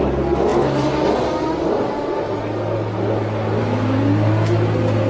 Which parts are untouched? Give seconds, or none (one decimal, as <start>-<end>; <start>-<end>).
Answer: 0.0-5.1